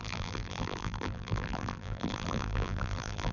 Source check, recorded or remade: remade